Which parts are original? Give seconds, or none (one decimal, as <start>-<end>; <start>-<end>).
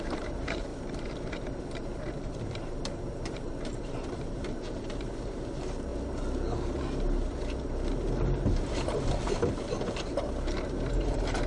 0.7-1.6; 5.9-9.9